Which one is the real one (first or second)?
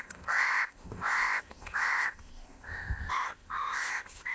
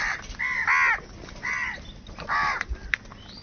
second